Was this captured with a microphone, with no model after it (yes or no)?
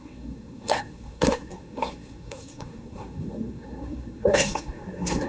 no